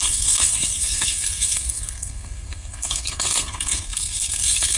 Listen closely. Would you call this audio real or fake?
fake